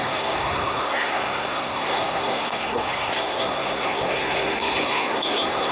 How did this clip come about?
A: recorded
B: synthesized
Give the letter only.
B